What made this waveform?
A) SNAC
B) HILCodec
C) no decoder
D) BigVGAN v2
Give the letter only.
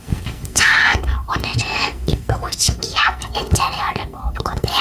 A